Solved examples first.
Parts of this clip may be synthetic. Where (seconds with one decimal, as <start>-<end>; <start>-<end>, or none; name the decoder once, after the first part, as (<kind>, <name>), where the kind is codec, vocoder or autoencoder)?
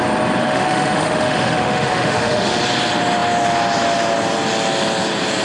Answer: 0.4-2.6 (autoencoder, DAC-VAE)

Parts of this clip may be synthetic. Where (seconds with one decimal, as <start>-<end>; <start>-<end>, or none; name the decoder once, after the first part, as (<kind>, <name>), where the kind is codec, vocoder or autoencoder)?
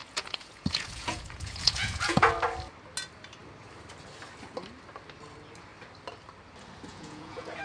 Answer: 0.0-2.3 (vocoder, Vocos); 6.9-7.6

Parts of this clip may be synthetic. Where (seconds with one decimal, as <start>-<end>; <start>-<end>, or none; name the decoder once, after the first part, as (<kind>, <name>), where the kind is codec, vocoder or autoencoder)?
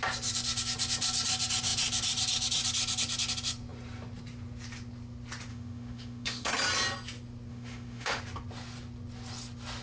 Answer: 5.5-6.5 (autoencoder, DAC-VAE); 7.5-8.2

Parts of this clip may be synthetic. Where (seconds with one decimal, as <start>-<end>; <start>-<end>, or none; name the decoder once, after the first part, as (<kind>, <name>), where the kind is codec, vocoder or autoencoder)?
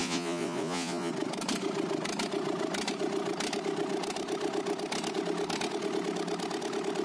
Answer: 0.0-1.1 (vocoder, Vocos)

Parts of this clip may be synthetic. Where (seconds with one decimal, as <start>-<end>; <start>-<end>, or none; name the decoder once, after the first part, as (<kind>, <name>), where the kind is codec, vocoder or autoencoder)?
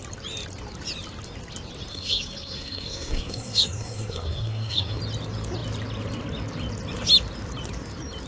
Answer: 1.9-5.0 (codec, SNAC)